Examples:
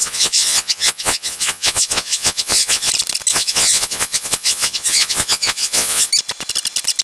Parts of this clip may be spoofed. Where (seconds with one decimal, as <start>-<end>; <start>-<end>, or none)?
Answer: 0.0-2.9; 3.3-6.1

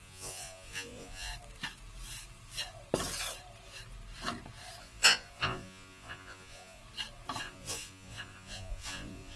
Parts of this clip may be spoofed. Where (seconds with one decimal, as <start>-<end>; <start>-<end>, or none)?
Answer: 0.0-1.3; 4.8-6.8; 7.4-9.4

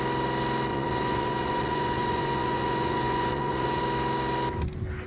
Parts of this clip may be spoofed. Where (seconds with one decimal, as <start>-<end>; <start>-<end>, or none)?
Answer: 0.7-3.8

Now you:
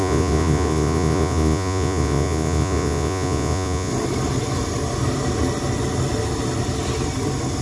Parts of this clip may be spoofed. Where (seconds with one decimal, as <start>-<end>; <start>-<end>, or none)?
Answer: 0.0-3.9

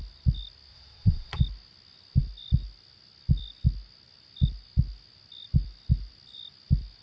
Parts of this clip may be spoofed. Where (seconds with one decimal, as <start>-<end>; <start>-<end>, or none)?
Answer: 0.7-1.4